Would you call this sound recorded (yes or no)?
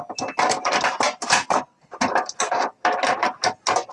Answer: yes